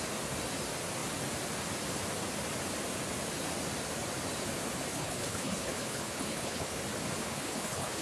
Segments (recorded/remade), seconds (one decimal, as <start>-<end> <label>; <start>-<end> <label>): 0.0-4.9 recorded; 4.9-6.8 remade; 6.8-7.2 recorded; 7.2-8.0 remade